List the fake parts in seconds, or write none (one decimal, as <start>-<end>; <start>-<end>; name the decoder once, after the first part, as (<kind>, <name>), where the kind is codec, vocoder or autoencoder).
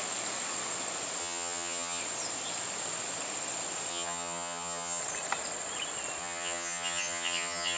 1.2-2.0 (vocoder, HiFi-GAN); 3.9-5.0; 6.2-7.8